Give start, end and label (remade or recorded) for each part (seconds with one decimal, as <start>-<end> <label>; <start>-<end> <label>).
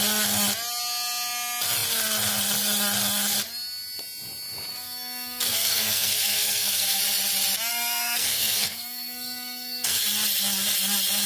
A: 0.0-4.7 recorded; 4.7-7.0 remade; 7.0-7.7 recorded; 7.7-10.0 remade; 10.0-11.3 recorded